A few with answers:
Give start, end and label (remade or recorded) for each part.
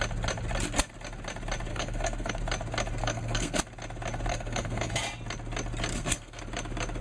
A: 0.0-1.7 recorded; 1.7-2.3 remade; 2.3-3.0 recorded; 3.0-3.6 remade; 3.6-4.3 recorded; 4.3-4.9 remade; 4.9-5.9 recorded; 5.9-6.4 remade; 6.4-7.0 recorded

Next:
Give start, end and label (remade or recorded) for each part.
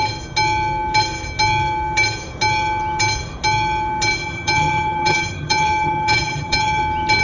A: 0.0-4.2 recorded; 4.2-6.8 remade; 6.8-7.2 recorded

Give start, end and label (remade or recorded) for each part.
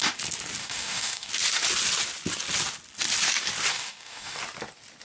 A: 0.0-0.6 recorded; 0.6-1.3 remade; 1.3-3.7 recorded; 3.7-4.4 remade; 4.4-5.0 recorded